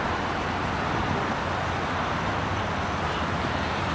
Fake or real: real